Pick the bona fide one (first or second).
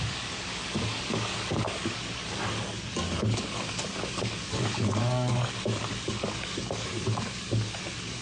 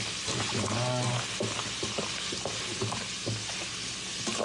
second